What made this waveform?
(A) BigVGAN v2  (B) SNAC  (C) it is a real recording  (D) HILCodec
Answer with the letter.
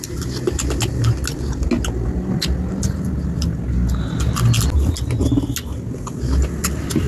C